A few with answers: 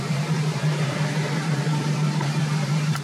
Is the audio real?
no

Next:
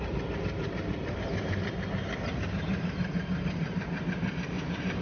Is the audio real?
no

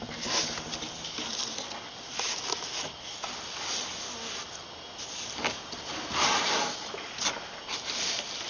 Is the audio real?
yes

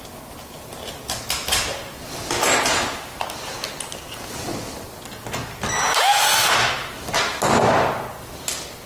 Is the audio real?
yes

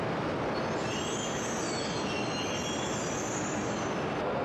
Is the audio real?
yes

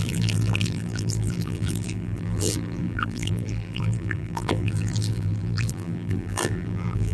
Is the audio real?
no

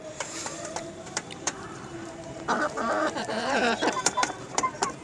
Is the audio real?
no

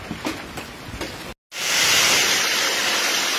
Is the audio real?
yes